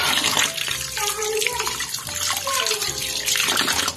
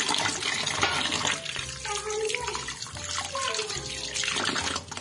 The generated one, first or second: first